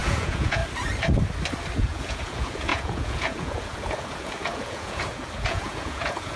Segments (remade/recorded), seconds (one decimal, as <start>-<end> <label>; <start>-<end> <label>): 0.0-0.6 remade; 0.6-1.8 recorded; 1.8-6.4 remade